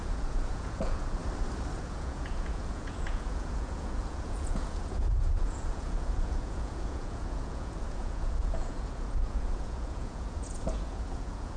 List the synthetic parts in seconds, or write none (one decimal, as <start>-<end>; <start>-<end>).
0.0-1.2; 1.8-11.6